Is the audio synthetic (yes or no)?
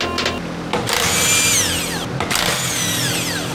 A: no